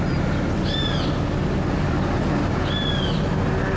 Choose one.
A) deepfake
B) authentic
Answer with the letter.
B